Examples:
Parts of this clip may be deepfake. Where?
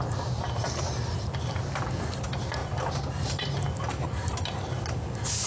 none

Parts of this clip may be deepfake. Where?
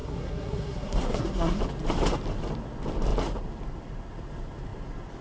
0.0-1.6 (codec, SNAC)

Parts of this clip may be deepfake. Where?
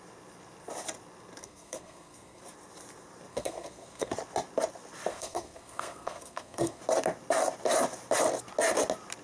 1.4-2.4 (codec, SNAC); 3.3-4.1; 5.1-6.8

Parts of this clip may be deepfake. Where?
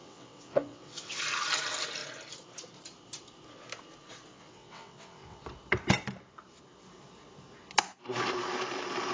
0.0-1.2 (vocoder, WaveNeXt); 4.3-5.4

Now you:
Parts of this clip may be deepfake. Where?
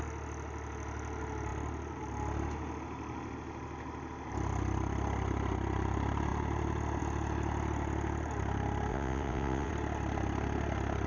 8.9-9.7 (vocoder, WaveNeXt)